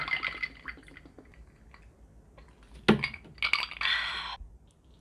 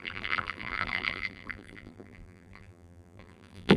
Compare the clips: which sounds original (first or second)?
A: first